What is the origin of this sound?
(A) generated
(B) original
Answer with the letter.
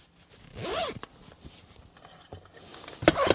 B